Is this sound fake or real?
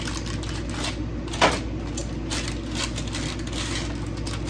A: real